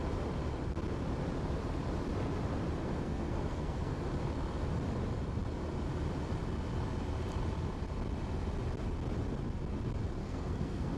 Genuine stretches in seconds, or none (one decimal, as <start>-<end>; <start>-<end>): 0.0-2.8; 4.0-10.2